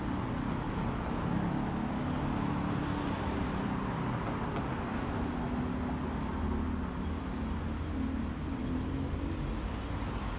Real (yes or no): yes